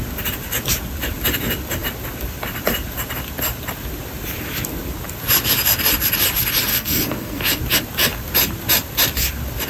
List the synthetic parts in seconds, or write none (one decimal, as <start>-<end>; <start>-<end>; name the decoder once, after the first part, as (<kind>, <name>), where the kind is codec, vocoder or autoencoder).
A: 6.7-7.6 (codec, SNAC)